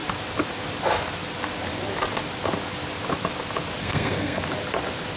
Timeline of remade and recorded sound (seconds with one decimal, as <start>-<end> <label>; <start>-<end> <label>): 0.0-3.8 recorded; 3.8-4.4 remade; 4.4-5.2 recorded